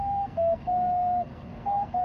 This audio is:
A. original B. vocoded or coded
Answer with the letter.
B